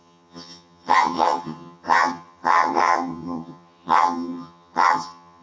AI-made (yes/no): yes